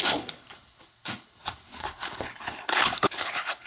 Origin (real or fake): fake